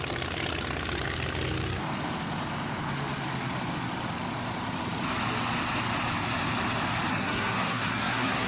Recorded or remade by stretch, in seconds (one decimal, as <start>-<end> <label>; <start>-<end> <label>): 0.0-7.1 recorded; 7.1-8.5 remade